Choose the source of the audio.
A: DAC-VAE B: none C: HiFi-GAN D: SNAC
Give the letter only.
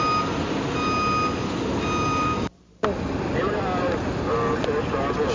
B